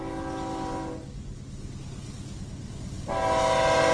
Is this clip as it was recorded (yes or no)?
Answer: yes